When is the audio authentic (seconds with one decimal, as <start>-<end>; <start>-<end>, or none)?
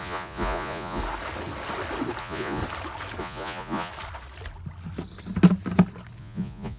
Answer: 1.0-2.2; 2.6-3.2; 3.9-6.2